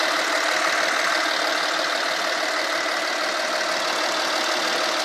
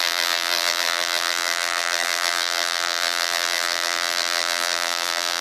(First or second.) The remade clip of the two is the second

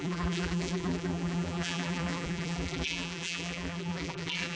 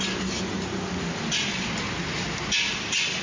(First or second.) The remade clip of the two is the first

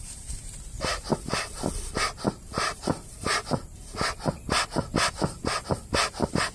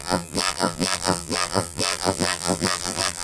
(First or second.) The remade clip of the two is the second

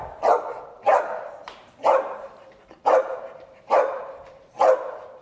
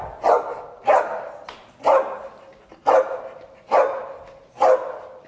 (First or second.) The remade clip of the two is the first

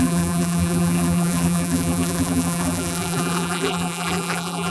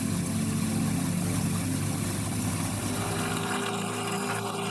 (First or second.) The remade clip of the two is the first